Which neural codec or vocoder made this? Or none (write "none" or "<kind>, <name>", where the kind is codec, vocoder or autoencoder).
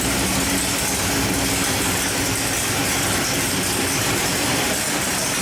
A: none